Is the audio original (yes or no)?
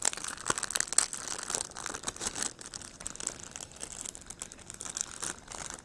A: yes